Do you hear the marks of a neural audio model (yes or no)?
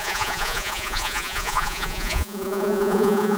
yes